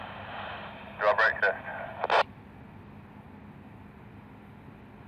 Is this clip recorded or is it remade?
recorded